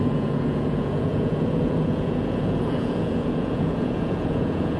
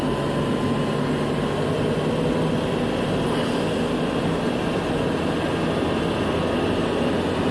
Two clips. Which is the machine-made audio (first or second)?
first